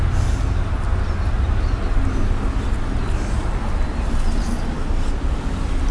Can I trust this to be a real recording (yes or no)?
yes